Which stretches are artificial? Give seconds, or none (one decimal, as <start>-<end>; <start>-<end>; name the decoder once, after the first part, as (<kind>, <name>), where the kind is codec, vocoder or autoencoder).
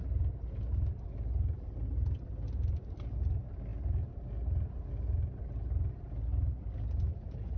none